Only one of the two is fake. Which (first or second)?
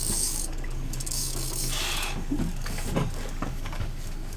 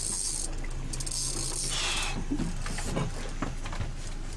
first